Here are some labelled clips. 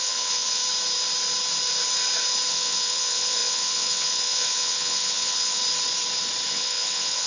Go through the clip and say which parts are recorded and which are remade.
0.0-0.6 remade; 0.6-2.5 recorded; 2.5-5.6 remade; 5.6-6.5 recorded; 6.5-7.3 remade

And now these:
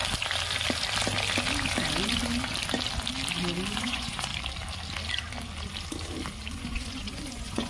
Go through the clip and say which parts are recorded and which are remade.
0.0-3.8 recorded; 3.8-4.3 remade; 4.3-6.5 recorded; 6.5-7.7 remade